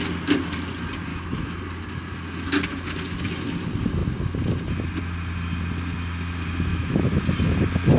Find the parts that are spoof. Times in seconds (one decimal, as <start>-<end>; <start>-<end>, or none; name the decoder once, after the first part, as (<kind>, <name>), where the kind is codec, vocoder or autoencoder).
1.1-1.6 (autoencoder, DAC-VAE); 6.7-7.2